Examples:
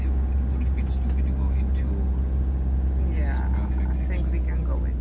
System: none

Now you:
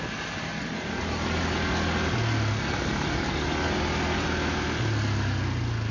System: none